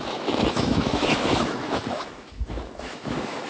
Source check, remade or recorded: remade